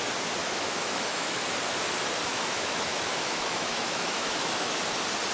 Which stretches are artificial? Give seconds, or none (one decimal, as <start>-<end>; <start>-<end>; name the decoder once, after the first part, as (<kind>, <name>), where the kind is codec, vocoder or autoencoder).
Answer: 0.4-1.4 (autoencoder, DAC-VAE); 2.3-4.8